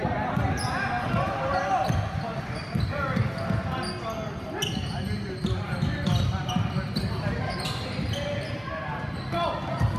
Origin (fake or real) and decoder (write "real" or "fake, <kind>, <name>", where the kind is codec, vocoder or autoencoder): real